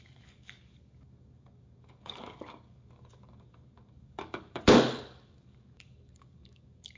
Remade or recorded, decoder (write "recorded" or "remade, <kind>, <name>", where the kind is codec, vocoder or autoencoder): remade, codec, DAC